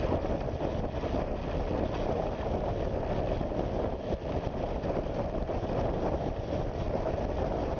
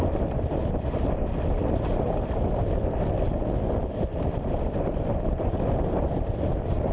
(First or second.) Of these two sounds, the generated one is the second